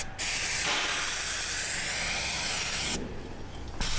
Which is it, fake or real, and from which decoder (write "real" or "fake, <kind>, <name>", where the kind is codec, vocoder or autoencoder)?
real